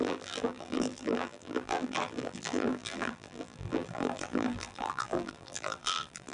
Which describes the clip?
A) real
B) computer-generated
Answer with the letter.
B